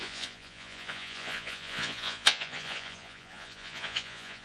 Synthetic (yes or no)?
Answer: yes